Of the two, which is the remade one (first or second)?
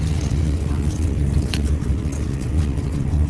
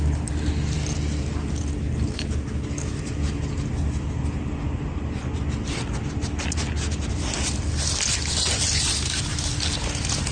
first